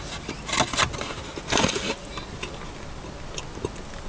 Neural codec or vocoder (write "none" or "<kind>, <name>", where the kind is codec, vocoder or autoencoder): none